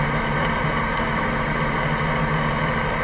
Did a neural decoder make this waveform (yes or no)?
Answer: no